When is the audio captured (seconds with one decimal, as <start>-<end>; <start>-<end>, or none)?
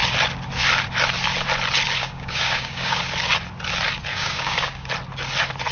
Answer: 0.0-2.0; 3.0-4.1; 4.9-5.7